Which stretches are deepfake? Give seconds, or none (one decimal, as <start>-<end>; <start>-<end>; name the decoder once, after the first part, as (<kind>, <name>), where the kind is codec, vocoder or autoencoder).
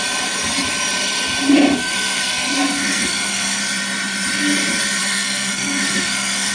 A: 1.8-3.6 (codec, SNAC); 5.0-6.5